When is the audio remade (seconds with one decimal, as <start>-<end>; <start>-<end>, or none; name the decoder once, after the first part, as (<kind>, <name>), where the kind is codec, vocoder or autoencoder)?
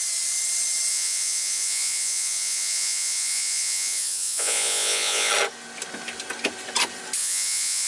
0.9-5.3 (vocoder, Vocos); 7.2-7.9